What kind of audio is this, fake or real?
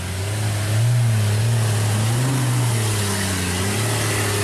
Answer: real